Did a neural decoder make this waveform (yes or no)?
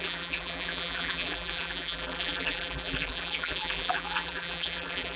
yes